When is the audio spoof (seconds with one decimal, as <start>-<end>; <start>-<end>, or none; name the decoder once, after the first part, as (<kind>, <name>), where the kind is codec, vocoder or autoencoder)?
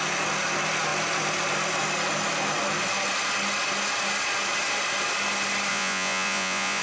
5.7-6.8 (vocoder, Vocos)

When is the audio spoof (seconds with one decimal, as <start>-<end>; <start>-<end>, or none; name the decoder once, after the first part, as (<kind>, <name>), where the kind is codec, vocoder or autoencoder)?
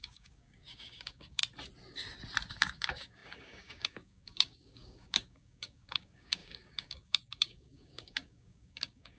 0.0-1.4 (codec, DAC); 2.5-9.2